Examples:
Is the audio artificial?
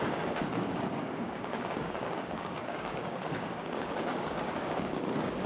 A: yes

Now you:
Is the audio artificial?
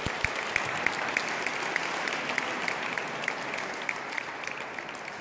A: no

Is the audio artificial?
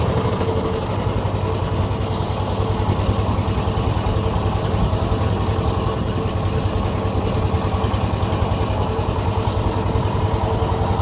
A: no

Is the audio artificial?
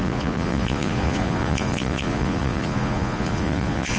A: yes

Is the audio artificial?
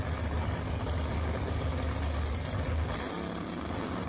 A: no